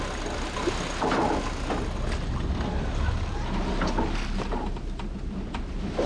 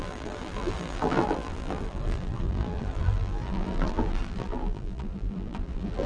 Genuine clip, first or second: first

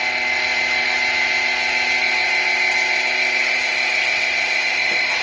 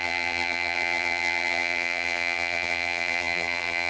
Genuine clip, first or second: first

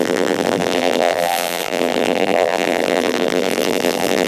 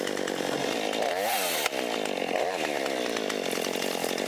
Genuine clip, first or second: second